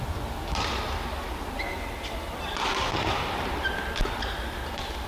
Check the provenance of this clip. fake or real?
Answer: real